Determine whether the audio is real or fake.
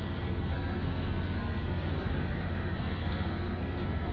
fake